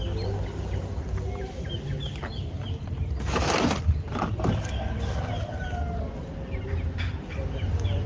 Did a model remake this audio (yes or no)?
no